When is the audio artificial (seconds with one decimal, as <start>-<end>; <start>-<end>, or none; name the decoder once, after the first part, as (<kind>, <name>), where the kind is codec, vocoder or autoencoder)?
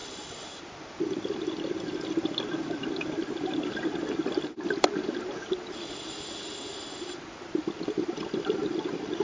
none